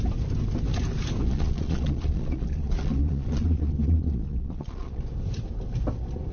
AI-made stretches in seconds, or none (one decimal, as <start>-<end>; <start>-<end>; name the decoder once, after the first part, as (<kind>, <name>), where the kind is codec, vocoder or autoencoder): 1.2-5.0 (vocoder, Vocos)